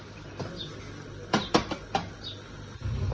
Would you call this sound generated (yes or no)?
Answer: no